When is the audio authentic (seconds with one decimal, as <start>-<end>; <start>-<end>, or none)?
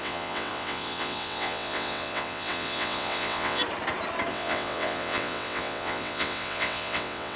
3.6-4.3